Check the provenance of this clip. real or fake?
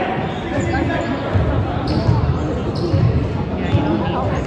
real